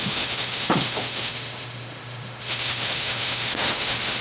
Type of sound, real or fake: fake